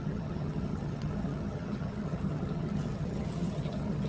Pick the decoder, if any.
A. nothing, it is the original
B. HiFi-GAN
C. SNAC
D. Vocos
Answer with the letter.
B